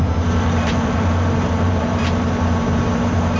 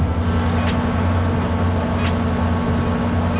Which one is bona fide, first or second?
second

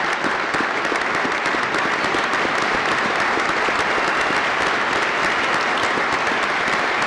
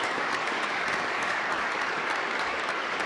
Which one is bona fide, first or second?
first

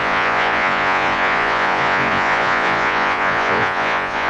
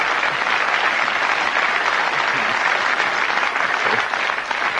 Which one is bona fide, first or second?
second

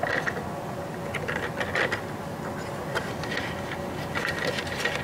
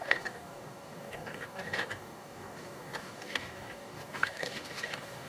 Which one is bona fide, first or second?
first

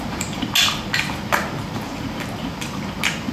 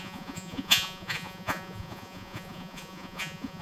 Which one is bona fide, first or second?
first